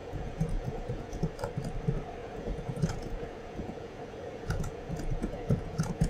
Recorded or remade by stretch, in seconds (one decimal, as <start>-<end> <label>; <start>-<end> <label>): 0.0-1.2 remade; 1.2-2.2 recorded; 2.2-6.1 remade